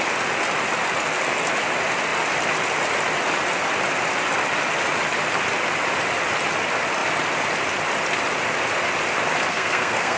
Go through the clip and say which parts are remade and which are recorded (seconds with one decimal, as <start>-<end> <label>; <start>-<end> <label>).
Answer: 0.0-9.5 recorded; 9.5-10.2 remade

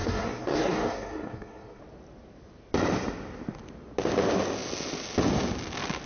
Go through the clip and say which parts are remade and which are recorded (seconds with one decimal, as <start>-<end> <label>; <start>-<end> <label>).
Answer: 0.0-1.8 remade; 1.8-6.1 recorded

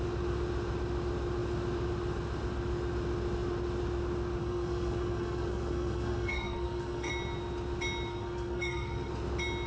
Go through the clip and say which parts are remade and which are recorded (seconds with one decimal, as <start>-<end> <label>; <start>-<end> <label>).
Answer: 0.0-4.4 recorded; 4.4-7.1 remade; 7.1-8.1 recorded; 8.1-9.1 remade; 9.1-9.7 recorded

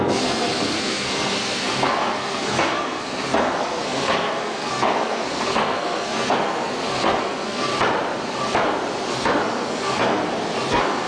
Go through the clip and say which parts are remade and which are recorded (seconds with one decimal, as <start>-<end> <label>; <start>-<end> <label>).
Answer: 0.0-7.7 remade; 7.7-9.1 recorded; 9.1-10.2 remade; 10.2-10.7 recorded; 10.7-11.1 remade

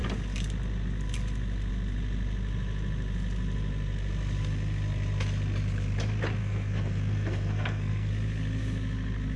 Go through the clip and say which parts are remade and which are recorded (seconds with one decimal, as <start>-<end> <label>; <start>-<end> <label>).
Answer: 0.0-6.4 recorded; 6.4-8.1 remade; 8.1-9.4 recorded

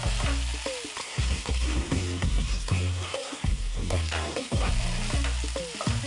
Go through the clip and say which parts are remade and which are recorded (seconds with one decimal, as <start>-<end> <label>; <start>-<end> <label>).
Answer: 0.0-1.0 recorded; 1.0-4.7 remade; 4.7-6.1 recorded

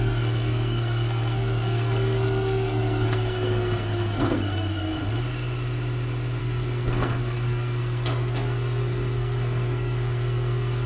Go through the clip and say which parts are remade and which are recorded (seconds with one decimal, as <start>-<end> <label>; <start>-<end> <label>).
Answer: 0.0-5.0 remade; 5.0-6.4 recorded; 6.4-10.9 remade

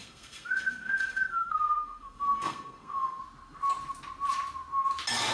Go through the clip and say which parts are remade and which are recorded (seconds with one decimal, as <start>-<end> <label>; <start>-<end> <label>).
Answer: 0.0-3.2 remade; 3.2-5.3 recorded